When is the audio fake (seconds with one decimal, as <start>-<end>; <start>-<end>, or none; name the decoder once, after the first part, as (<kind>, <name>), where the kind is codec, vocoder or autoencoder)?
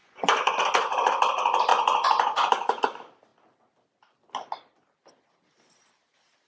0.0-0.6 (vocoder, Vocos); 1.7-2.8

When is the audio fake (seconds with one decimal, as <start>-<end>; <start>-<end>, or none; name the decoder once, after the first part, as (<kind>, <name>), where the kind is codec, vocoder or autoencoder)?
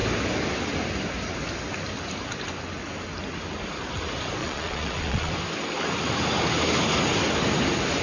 4.4-5.3 (vocoder, Vocos)